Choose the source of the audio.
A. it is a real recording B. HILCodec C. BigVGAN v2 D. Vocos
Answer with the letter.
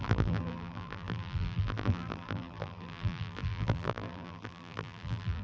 C